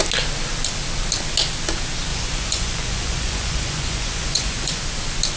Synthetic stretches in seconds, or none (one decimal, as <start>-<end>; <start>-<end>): 2.1-4.8